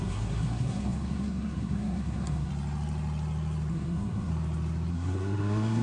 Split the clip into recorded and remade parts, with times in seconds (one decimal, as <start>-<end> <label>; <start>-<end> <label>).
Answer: 0.0-2.5 remade; 2.5-3.7 recorded; 3.7-4.3 remade; 4.3-4.9 recorded; 4.9-5.8 remade